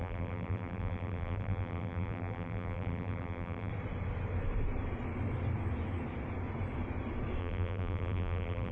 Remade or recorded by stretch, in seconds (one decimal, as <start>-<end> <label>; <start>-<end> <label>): 0.0-3.7 remade; 3.7-7.4 recorded; 7.4-8.7 remade